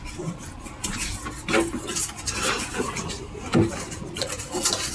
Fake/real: real